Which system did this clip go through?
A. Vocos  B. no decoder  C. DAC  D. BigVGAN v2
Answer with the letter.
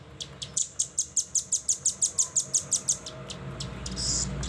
B